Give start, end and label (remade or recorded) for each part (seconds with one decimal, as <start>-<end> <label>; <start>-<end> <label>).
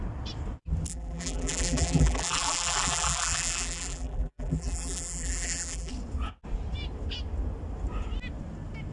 0.0-0.9 recorded; 0.9-5.9 remade; 5.9-8.9 recorded